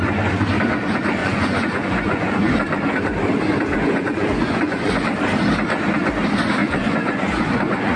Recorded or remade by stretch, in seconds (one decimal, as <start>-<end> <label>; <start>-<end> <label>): 0.0-1.2 recorded; 1.2-2.5 remade; 2.5-3.7 recorded; 3.7-5.0 remade; 5.0-6.6 recorded; 6.6-8.0 remade